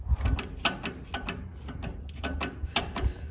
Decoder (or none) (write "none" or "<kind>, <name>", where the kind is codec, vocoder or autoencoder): none